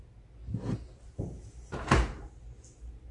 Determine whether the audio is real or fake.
real